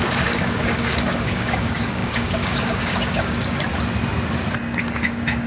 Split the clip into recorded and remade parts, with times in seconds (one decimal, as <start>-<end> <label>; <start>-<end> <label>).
0.0-3.7 remade; 3.7-4.8 recorded; 4.8-5.5 remade